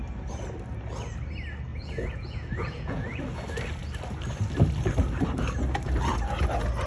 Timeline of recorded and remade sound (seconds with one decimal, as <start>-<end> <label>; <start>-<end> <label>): 0.0-1.7 recorded; 1.7-3.2 remade; 3.2-6.9 recorded